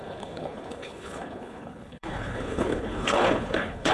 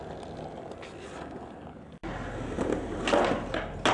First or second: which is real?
second